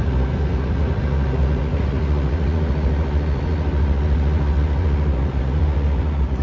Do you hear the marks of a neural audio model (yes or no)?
yes